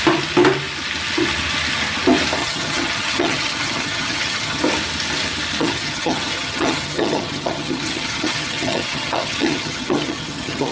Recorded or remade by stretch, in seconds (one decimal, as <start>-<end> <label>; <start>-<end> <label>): 0.0-2.4 recorded; 2.4-4.6 remade; 4.6-5.6 recorded; 5.6-10.7 remade